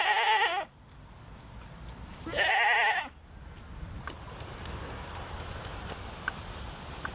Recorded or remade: recorded